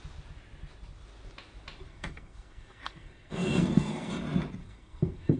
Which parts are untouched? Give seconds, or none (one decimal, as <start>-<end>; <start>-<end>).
0.0-1.9; 4.1-4.6